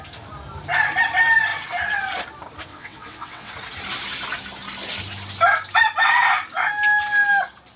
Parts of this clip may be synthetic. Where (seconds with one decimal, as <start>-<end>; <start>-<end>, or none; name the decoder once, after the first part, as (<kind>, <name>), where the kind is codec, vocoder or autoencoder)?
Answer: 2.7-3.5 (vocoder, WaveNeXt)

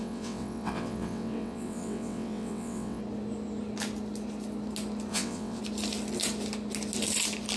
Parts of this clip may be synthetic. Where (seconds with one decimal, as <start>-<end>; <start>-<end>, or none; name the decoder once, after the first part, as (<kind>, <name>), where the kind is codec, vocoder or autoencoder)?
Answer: 0.0-3.0 (vocoder, WaveNeXt); 5.1-5.6

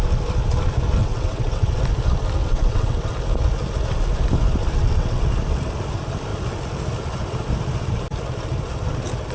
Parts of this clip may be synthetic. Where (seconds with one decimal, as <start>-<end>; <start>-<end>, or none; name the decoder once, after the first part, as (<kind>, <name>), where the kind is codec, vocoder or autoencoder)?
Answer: 1.0-1.8 (vocoder, WaveNeXt); 2.4-3.1; 4.6-5.2

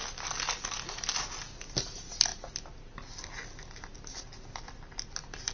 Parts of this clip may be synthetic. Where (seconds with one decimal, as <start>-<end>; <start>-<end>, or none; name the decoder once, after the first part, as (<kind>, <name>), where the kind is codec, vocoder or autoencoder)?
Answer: none